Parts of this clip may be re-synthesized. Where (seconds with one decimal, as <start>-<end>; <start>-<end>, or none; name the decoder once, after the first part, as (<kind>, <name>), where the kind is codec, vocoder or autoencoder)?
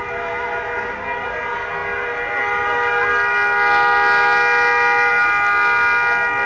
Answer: none